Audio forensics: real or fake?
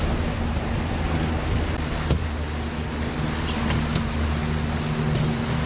real